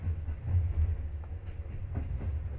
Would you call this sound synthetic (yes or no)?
no